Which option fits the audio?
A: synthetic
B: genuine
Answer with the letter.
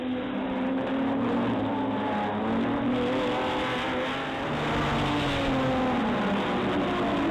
B